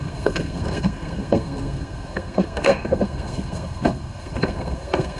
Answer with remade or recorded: remade